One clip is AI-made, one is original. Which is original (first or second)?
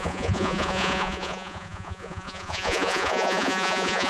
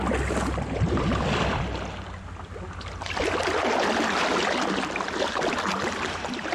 second